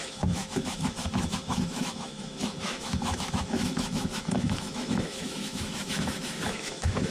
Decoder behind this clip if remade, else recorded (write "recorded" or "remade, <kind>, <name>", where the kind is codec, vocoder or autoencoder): remade, autoencoder, DAC-VAE